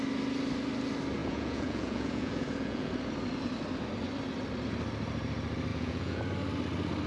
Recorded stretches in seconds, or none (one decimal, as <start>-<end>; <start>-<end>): 0.0-1.2; 2.9-5.7; 6.2-7.1